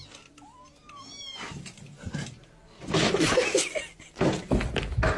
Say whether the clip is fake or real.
real